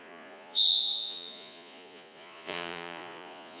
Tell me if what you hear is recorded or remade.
remade